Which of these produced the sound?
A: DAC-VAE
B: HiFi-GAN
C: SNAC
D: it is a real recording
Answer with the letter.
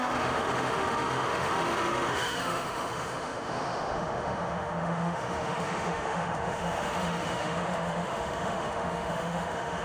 A